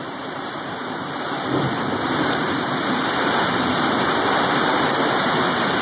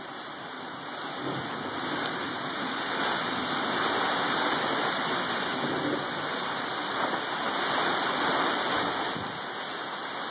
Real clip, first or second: second